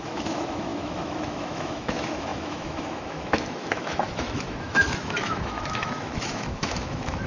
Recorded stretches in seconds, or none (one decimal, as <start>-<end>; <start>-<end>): none